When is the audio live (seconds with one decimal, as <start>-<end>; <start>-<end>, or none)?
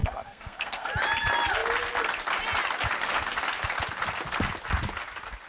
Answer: 0.9-5.5